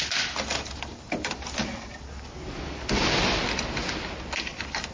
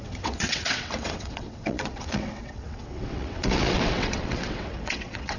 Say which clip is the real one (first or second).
first